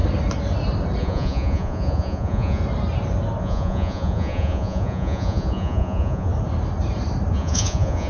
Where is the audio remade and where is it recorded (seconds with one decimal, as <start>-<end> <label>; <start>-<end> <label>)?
0.0-1.0 recorded; 1.0-2.6 remade; 2.6-3.4 recorded; 3.4-6.3 remade; 6.3-7.3 recorded; 7.3-8.1 remade